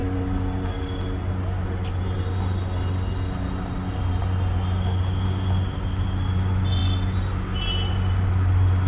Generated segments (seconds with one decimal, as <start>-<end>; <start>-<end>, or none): none